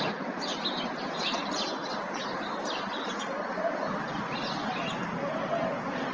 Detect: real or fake real